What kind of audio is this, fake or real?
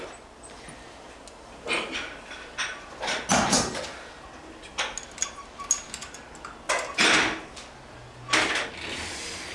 real